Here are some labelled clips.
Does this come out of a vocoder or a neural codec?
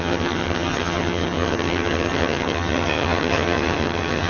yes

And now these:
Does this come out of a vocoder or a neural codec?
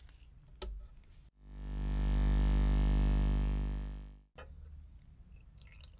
no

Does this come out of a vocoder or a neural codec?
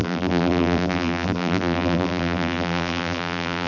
yes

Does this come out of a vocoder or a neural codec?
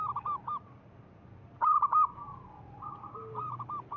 yes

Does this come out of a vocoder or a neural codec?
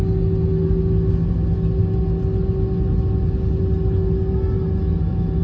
no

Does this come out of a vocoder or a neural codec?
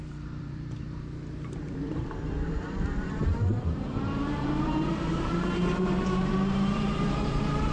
yes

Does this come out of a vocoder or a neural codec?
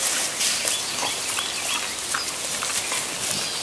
no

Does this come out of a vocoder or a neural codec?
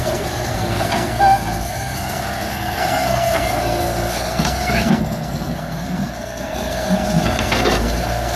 yes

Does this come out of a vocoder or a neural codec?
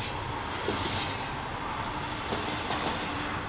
no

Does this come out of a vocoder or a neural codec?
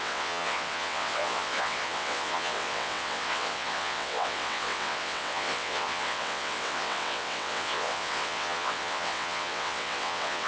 yes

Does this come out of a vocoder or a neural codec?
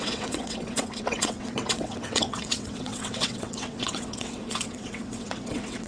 yes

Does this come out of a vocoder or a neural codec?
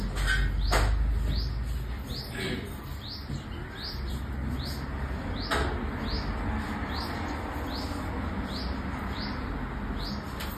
no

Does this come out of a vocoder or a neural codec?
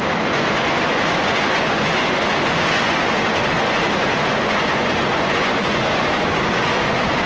yes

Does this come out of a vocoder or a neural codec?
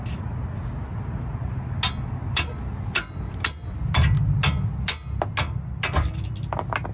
no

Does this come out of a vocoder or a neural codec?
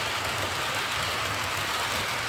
no